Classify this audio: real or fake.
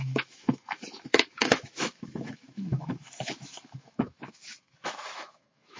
fake